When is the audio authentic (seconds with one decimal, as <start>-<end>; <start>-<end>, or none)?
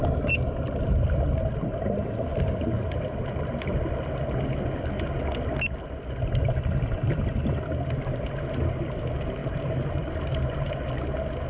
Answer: 0.0-2.3; 3.9-9.4; 10.7-11.5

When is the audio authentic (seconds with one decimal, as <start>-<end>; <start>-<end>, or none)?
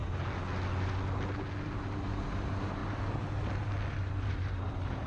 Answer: 0.0-1.6; 2.8-3.9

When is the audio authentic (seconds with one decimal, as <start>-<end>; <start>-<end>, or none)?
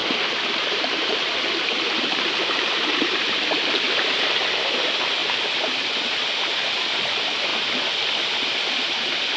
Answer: 4.2-9.4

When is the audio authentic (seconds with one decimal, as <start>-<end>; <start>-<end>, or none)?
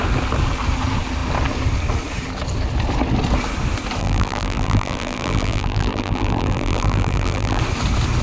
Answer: 0.0-4.0; 7.6-8.2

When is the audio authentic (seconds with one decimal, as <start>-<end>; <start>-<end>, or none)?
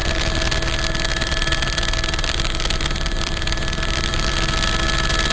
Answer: 0.0-1.1; 4.3-5.3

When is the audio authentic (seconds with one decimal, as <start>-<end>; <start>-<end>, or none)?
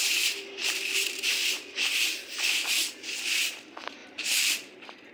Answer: 0.0-0.6; 2.9-4.0